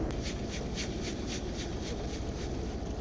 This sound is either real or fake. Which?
real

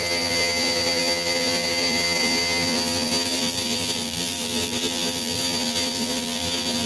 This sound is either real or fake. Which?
fake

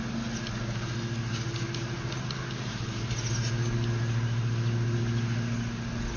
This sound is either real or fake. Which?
real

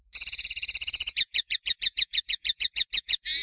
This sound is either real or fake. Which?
fake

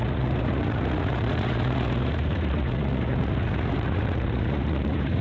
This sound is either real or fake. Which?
fake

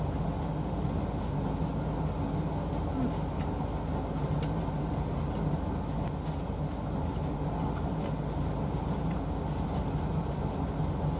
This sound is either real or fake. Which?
real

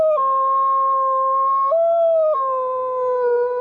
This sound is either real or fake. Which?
real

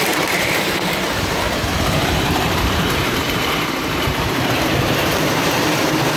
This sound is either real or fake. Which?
fake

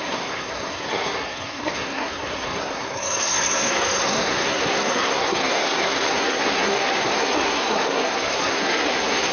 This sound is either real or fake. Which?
fake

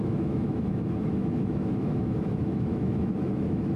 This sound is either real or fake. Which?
fake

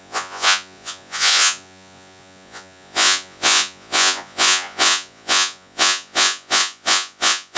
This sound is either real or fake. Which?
fake